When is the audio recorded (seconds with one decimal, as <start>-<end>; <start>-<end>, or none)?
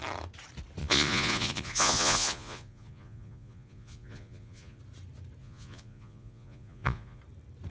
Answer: 0.0-0.8; 4.8-5.4; 7.2-7.7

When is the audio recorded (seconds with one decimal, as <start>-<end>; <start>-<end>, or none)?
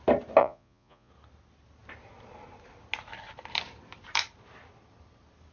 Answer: 0.0-0.4; 1.1-5.5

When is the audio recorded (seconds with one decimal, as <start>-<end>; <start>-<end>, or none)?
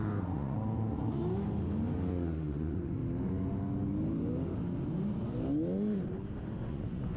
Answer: 1.2-2.1; 3.0-6.7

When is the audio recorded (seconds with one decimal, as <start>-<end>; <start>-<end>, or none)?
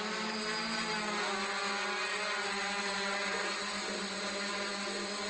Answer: 0.0-5.3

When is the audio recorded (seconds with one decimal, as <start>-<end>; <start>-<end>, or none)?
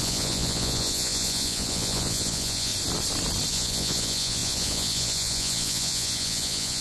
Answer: 2.7-3.5